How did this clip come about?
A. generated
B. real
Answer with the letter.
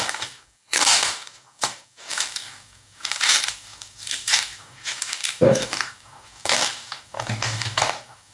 A